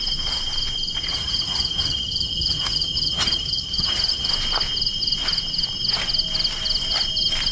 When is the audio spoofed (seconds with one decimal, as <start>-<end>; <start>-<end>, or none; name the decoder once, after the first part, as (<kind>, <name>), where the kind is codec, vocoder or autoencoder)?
1.1-4.3 (vocoder, HiFi-GAN)